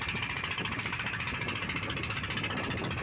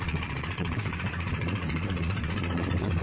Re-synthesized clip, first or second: second